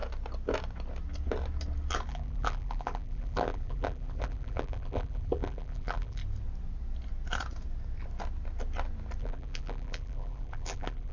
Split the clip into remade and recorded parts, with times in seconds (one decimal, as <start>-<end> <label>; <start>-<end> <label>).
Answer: 0.0-2.1 recorded; 2.1-6.2 remade; 6.2-9.2 recorded; 9.2-11.1 remade